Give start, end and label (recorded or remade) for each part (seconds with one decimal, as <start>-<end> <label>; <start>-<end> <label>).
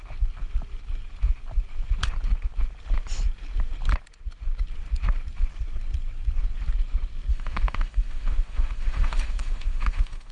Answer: 0.0-7.3 recorded; 7.3-10.3 remade